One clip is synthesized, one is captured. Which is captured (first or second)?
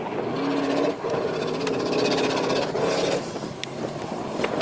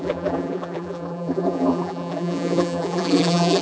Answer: first